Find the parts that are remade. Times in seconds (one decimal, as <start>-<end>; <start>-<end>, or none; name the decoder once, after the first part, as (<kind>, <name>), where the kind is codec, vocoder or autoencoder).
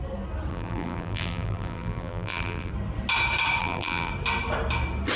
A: 0.5-2.7 (vocoder, BigVGAN v2); 3.6-4.1